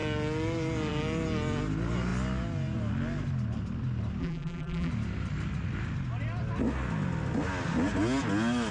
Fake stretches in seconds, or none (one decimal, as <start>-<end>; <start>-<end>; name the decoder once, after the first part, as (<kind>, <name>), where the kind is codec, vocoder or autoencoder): 4.2-4.9 (vocoder, BigVGAN v2)